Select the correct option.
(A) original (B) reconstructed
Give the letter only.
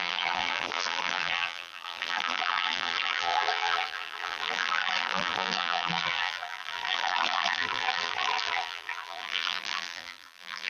B